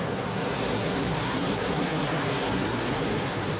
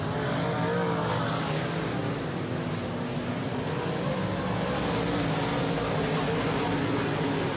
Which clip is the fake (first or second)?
first